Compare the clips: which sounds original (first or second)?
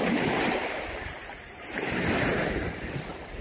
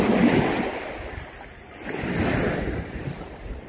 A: second